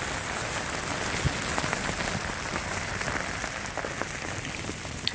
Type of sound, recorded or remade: recorded